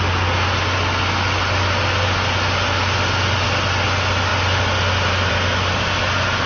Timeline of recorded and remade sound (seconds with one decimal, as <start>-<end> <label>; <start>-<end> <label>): 0.0-6.5 recorded